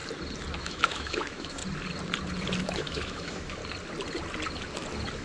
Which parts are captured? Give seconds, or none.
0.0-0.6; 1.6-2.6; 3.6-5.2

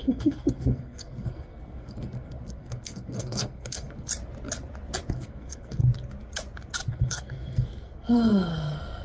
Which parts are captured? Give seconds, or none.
4.1-5.1; 5.8-6.9

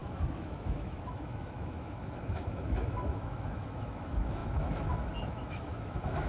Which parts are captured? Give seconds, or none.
none

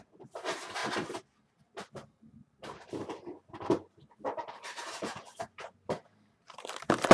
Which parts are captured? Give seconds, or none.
0.8-1.7

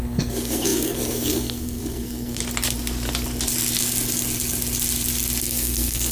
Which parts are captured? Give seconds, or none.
2.4-5.4

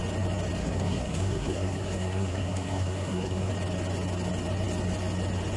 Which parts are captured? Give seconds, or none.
0.0-0.6; 3.5-5.6

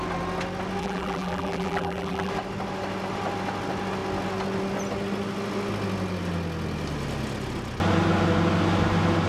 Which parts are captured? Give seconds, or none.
0.0-0.8; 2.3-9.3